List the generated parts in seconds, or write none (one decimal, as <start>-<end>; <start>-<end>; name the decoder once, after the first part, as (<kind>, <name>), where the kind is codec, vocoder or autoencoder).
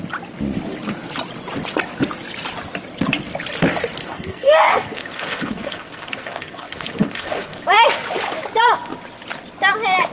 4.0-7.6 (codec, SNAC)